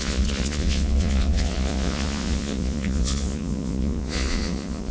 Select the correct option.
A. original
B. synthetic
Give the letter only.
B